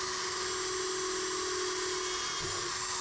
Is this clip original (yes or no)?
yes